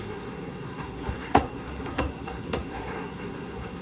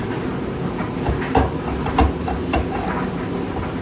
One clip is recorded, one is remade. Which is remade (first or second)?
first